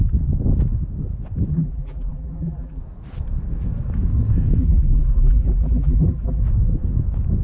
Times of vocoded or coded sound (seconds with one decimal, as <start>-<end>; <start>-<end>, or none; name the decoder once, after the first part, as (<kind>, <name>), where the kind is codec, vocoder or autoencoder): 1.5-2.8 (vocoder, BigVGAN v2); 4.6-6.4